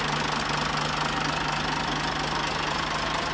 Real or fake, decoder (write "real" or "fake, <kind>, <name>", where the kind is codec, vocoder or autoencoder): real